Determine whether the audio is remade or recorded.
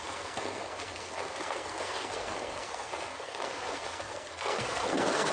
remade